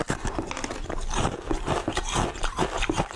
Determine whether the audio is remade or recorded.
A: recorded